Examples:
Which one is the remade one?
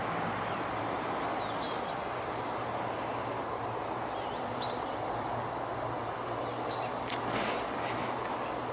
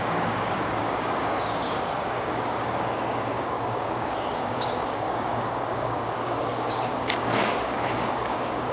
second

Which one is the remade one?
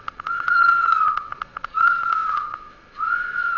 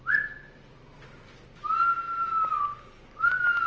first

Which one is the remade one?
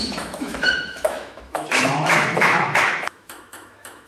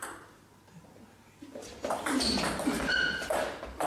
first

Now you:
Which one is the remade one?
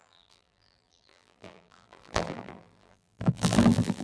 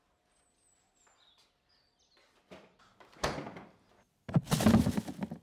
first